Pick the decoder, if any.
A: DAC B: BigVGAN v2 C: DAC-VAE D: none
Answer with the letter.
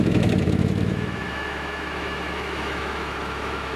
C